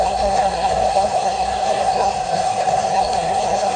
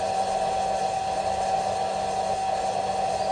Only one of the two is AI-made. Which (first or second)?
first